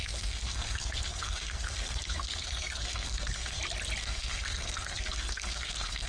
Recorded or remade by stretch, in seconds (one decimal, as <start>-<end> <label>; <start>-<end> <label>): 0.0-3.6 remade; 3.6-4.0 recorded; 4.0-6.1 remade